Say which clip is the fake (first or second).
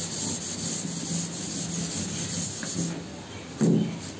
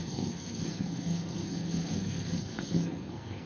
second